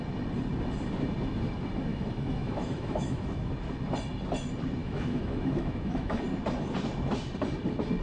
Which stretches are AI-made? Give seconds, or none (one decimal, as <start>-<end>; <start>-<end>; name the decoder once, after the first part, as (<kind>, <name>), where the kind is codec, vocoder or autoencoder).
1.9-3.5 (autoencoder, DAC-VAE); 4.8-6.2